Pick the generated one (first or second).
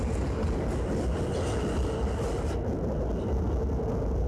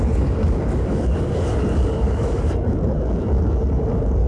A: second